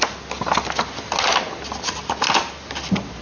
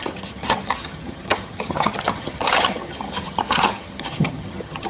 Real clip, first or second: first